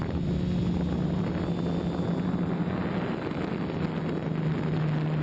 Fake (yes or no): no